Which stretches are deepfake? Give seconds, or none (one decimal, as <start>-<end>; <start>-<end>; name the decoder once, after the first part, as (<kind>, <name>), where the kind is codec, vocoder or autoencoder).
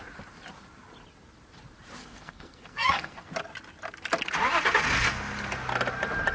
2.0-3.3 (codec, SNAC)